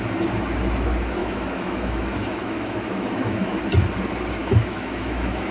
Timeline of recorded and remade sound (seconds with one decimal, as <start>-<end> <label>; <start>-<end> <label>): 0.0-1.2 recorded; 1.2-3.6 remade; 3.6-4.4 recorded; 4.4-5.5 remade